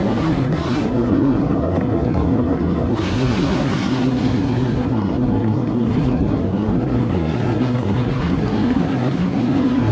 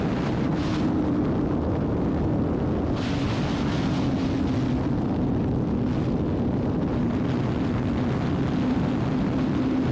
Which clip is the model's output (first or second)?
first